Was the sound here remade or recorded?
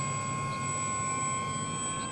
recorded